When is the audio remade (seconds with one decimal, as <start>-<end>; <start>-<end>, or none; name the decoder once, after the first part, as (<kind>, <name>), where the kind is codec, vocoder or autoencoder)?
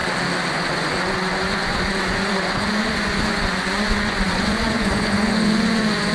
0.5-6.1 (vocoder, Vocos)